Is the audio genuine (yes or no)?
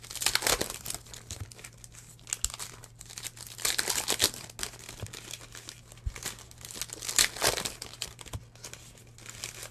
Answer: yes